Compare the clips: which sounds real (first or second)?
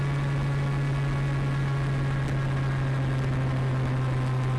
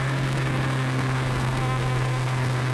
first